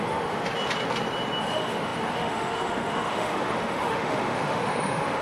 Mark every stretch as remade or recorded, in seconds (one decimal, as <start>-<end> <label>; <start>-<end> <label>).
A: 0.0-0.4 remade; 0.4-1.4 recorded; 1.4-5.2 remade